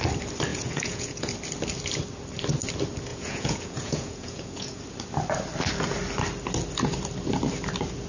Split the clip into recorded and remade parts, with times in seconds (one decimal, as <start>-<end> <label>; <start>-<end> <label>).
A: 0.0-0.5 recorded; 0.5-1.3 remade; 1.3-3.1 recorded; 3.1-4.8 remade; 4.8-8.1 recorded